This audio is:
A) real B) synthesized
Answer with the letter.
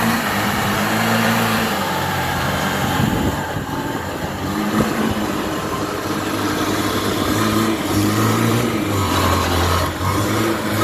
B